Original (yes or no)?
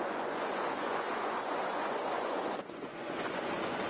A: no